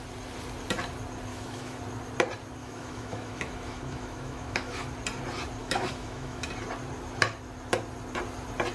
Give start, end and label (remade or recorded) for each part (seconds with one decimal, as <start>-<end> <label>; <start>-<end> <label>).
0.0-1.3 recorded; 1.3-1.8 remade; 1.8-2.6 recorded; 2.6-4.9 remade; 4.9-5.6 recorded; 5.6-6.5 remade; 6.5-8.7 recorded